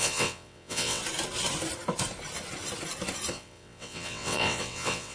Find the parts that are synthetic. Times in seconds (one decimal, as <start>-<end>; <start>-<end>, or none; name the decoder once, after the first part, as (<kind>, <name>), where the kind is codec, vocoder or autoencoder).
0.0-1.0 (vocoder, WaveNeXt); 3.3-5.1